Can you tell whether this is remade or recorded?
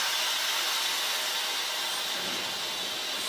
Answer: recorded